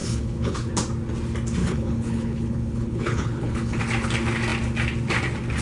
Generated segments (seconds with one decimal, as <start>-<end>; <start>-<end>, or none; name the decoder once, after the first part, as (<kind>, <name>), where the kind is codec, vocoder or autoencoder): 0.0-0.7 (codec, HILCodec); 1.6-3.8